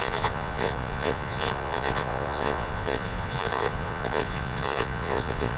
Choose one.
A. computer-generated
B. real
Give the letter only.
A